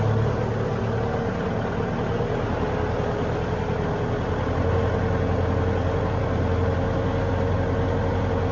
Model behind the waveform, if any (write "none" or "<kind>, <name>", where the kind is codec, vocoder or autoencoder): none